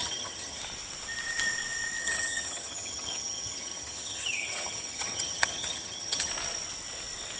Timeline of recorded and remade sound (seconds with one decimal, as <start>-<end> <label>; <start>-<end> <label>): 0.0-0.6 remade; 0.6-2.0 recorded; 2.0-6.3 remade; 6.3-7.4 recorded